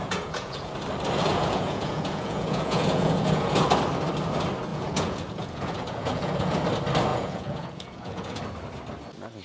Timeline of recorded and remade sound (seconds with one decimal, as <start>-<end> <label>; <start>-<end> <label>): 0.0-0.7 remade; 0.7-1.3 recorded; 1.3-3.7 remade; 3.7-4.7 recorded; 4.7-6.6 remade; 6.6-7.1 recorded; 7.1-8.4 remade; 8.4-9.4 recorded